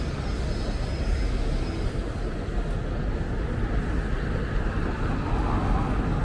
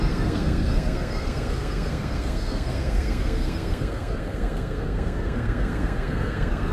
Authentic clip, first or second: first